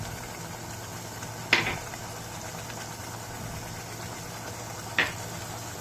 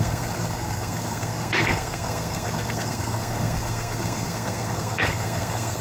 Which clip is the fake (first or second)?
second